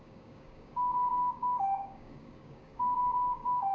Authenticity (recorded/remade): remade